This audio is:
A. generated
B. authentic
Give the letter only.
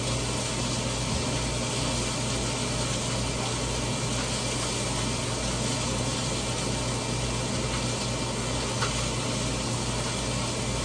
B